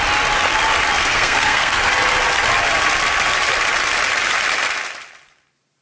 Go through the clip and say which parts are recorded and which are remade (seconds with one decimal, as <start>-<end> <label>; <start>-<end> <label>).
0.0-1.0 recorded; 1.0-1.9 remade; 1.9-5.8 recorded